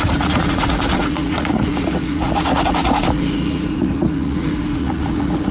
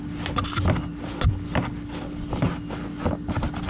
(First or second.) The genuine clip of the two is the second